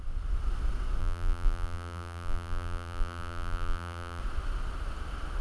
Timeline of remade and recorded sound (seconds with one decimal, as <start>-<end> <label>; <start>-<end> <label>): 0.0-1.0 recorded; 1.0-4.2 remade; 4.2-5.4 recorded